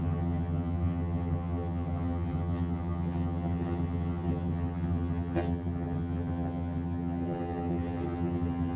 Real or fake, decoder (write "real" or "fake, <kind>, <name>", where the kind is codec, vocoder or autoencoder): fake, vocoder, HiFi-GAN